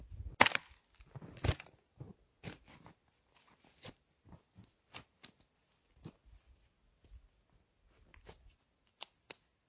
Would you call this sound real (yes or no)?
yes